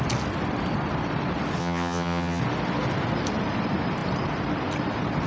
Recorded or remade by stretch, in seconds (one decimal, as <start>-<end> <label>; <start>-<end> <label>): 0.0-1.6 recorded; 1.6-2.4 remade; 2.4-5.3 recorded